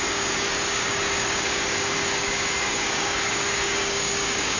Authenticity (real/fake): fake